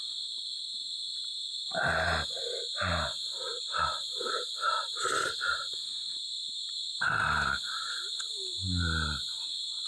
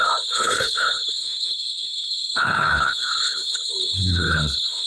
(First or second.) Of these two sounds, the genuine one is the first